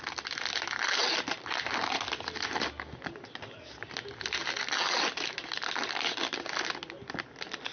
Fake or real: real